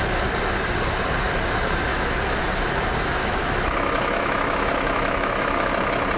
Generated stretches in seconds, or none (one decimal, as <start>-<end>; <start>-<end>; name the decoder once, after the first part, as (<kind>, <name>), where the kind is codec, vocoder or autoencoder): 1.9-2.5 (autoencoder, DAC-VAE); 3.2-5.7